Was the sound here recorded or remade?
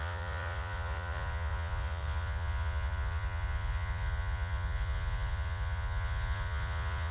remade